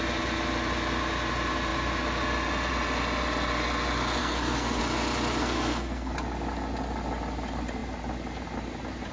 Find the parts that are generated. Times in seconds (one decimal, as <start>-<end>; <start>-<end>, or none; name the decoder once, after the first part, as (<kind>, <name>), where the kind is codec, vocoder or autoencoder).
4.2-4.8 (codec, SNAC); 5.4-6.1